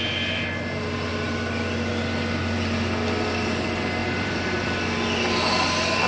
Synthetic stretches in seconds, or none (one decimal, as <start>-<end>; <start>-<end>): 4.0-4.7